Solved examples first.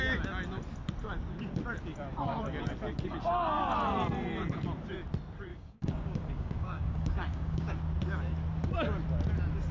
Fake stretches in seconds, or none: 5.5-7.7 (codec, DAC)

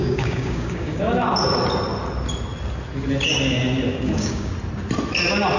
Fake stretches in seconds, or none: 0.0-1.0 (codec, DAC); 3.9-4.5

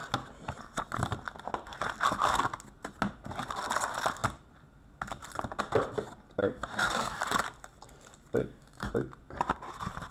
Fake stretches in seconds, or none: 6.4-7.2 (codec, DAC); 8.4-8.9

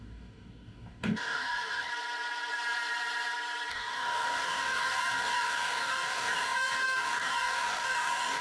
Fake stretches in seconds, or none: 0.0-1.9 (codec, DAC); 3.7-8.4

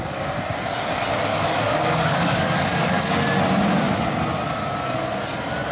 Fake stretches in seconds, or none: 1.3-3.0 (codec, DAC)